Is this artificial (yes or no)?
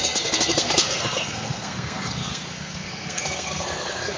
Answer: yes